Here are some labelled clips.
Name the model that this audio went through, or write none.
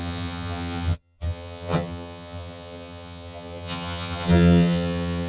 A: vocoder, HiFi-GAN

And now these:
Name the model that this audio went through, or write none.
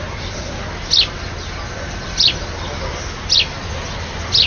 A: none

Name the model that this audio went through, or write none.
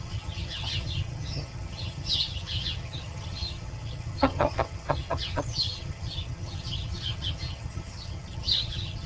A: vocoder, HiFi-GAN